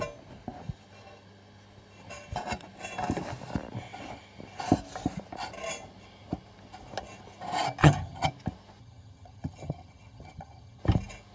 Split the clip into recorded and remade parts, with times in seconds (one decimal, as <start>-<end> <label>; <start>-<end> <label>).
0.0-7.8 recorded; 7.8-8.3 remade; 8.3-8.8 recorded; 8.8-10.8 remade; 10.8-11.3 recorded